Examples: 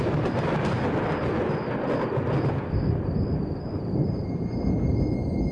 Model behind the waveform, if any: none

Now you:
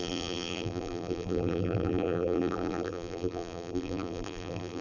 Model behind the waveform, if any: vocoder, BigVGAN v2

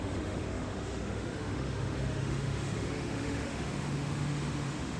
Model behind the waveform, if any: autoencoder, DAC-VAE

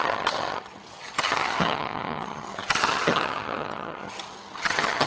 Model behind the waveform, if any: vocoder, HiFi-GAN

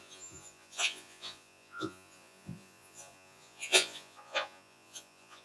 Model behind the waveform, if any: vocoder, Vocos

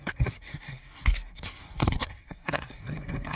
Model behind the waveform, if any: codec, SNAC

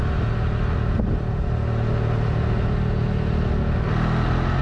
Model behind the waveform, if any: none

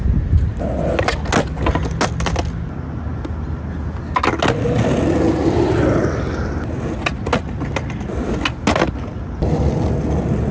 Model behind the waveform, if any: none